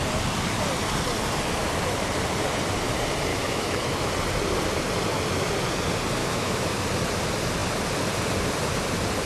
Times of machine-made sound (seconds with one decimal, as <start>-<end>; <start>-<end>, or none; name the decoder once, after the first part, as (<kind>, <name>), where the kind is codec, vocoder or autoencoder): 3.3-4.1 (autoencoder, DAC-VAE); 6.2-6.8